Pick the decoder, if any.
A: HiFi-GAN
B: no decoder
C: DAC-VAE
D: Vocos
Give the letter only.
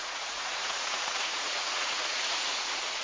D